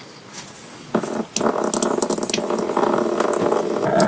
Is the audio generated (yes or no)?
no